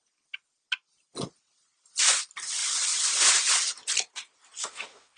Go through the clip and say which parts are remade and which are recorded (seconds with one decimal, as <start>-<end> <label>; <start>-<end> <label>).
0.0-4.6 recorded; 4.6-5.2 remade